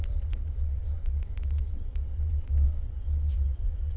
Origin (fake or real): fake